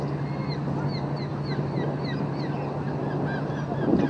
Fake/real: real